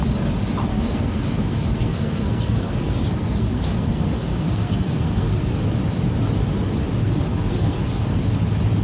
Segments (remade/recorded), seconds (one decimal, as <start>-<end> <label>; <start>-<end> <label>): 0.0-0.7 recorded; 0.7-5.5 remade; 5.5-7.0 recorded; 7.0-8.2 remade; 8.2-8.8 recorded